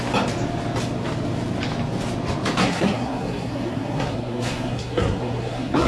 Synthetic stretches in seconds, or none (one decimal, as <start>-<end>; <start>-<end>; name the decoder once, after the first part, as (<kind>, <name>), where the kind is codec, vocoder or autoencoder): 2.6-5.9 (codec, SNAC)